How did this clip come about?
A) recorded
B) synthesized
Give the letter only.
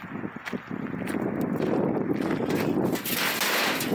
A